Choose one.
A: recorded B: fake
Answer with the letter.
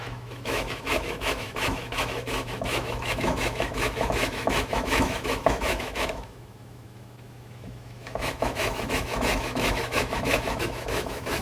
B